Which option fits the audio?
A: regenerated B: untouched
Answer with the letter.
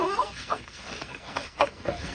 A